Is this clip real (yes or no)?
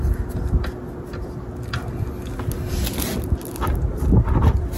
yes